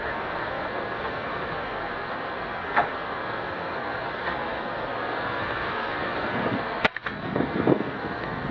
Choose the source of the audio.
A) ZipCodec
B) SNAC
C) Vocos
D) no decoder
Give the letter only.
B